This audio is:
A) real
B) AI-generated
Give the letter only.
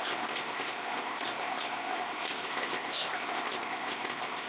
B